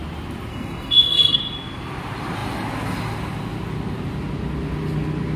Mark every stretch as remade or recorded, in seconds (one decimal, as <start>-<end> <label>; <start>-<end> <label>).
0.0-0.5 recorded; 0.5-1.4 remade; 1.4-5.4 recorded